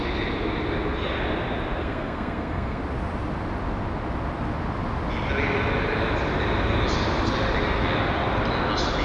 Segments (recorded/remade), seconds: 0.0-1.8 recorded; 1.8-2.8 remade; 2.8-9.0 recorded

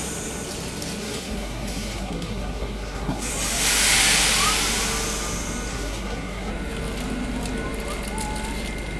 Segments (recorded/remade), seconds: 0.0-1.0 recorded; 1.0-3.3 remade; 3.3-5.7 recorded; 5.7-6.5 remade; 6.5-9.0 recorded

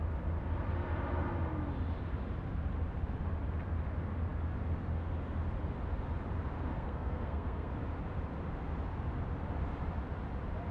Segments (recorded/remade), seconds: 0.0-6.7 recorded; 6.7-7.7 remade; 7.7-10.7 recorded